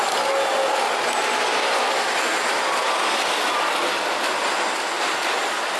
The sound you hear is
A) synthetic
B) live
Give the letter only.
B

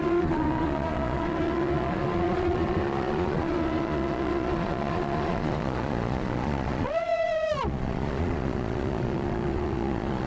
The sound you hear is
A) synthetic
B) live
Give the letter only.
A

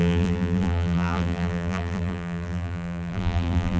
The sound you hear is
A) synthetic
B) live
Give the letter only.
A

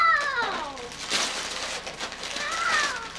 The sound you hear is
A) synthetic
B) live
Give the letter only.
B